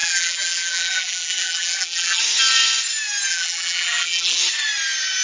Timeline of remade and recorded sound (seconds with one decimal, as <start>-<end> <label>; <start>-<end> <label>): 0.0-2.2 remade; 2.2-3.3 recorded; 3.3-4.4 remade; 4.4-5.2 recorded